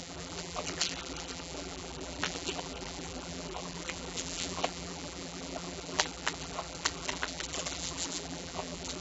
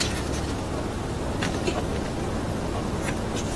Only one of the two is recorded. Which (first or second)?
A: second